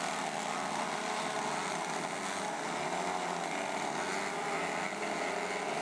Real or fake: real